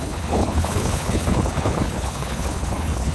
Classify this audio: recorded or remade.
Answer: remade